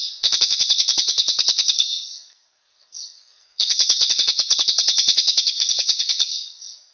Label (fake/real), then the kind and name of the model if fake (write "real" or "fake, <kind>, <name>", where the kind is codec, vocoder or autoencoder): fake, codec, SNAC